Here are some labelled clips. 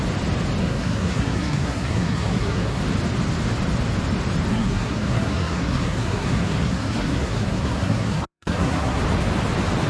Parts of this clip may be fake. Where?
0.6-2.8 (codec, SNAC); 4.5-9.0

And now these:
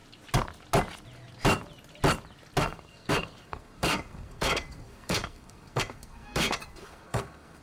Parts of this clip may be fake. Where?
2.6-7.6 (codec, SNAC)

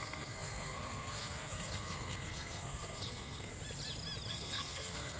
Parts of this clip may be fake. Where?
0.0-3.5 (codec, SNAC); 4.3-5.2

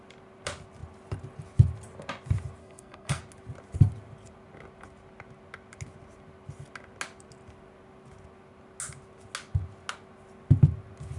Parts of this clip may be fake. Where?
2.6-3.2 (codec, SNAC)